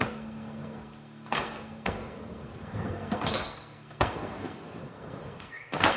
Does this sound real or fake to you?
fake